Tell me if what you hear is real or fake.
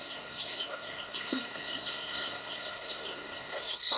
fake